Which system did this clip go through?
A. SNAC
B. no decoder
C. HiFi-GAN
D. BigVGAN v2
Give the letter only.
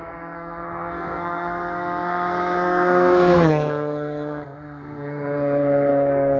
A